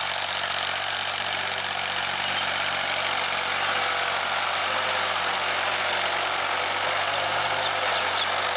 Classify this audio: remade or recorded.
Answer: recorded